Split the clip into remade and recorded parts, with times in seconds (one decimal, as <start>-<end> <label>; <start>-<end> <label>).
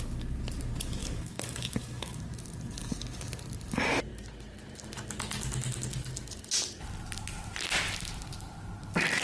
0.0-1.0 recorded; 1.0-2.2 remade; 2.2-9.2 recorded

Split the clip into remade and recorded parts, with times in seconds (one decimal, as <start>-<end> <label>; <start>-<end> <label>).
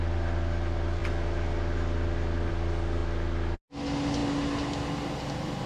0.0-5.7 recorded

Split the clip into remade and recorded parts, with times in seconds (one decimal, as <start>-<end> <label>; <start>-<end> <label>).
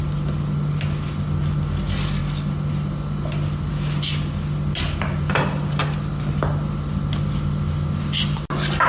0.0-8.9 recorded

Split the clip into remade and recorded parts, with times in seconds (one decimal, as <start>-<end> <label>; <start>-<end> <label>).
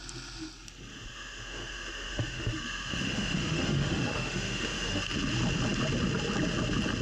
0.0-0.9 recorded; 0.9-5.1 remade; 5.1-7.0 recorded